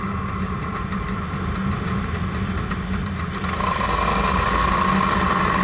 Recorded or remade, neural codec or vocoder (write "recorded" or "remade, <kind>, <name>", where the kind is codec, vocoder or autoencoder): recorded